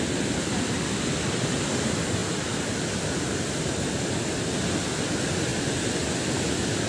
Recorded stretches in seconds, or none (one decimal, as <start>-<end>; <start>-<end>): 0.0-6.9